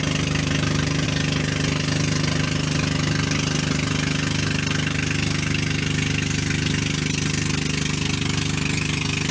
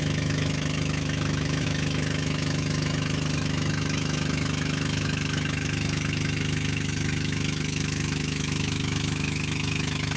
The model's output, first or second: second